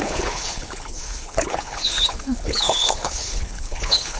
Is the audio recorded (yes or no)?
no